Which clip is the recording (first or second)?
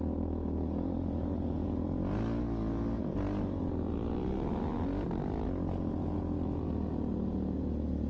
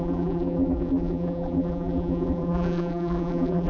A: first